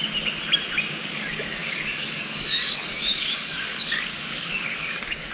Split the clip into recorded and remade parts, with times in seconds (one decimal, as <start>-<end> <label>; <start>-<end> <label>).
0.0-0.9 recorded; 0.9-5.3 remade